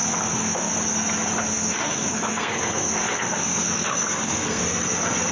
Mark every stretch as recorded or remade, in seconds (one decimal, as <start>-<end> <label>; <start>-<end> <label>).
0.0-0.7 remade; 0.7-1.4 recorded; 1.4-4.6 remade; 4.6-5.3 recorded